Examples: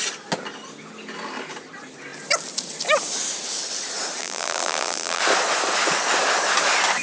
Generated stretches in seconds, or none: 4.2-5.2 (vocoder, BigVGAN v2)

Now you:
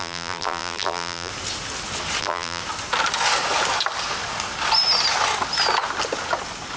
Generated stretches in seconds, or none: 0.0-1.3 (vocoder, BigVGAN v2); 2.2-2.6

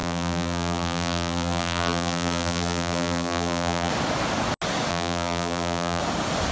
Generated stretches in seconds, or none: 0.0-3.9 (vocoder, BigVGAN v2); 4.9-6.0

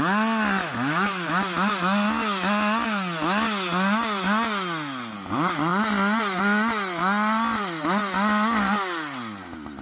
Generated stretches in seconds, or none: none